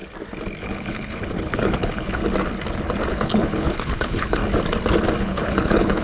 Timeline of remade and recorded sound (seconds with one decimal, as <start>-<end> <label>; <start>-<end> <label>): 0.0-0.6 recorded; 0.6-2.2 remade; 2.2-3.1 recorded; 3.1-4.4 remade; 4.4-5.2 recorded; 5.2-6.0 remade